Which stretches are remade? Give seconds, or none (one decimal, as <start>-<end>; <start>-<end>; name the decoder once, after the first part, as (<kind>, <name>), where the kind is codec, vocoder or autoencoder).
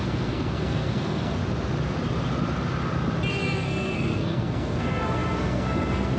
0.0-1.4 (codec, SNAC); 3.3-6.2